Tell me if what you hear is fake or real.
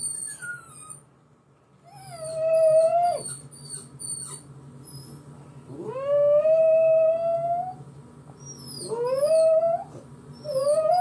real